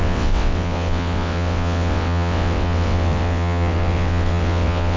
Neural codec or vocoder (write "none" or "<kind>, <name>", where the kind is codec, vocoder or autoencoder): vocoder, WaveNeXt